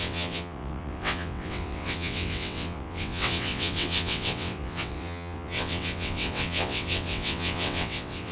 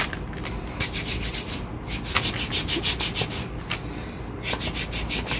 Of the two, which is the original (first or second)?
second